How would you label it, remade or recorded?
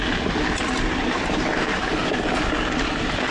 recorded